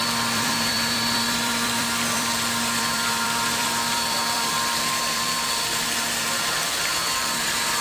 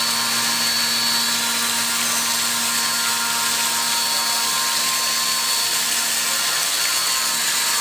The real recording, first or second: second